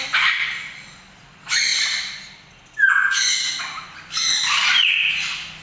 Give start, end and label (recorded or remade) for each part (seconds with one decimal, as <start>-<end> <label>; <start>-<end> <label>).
0.0-5.6 recorded